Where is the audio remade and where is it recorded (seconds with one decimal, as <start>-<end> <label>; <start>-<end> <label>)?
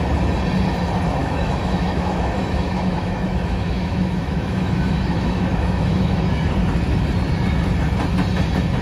0.0-1.2 recorded; 1.2-6.3 remade; 6.3-8.8 recorded